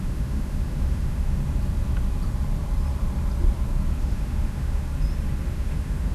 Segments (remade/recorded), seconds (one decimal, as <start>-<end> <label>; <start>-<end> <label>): 0.0-1.4 remade; 1.4-4.0 recorded; 4.0-4.9 remade; 4.9-5.5 recorded; 5.5-6.1 remade